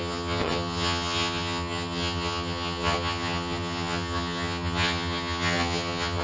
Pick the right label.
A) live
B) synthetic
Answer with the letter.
B